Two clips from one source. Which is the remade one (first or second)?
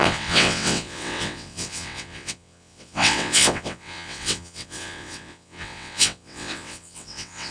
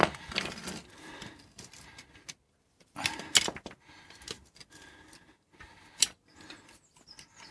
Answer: first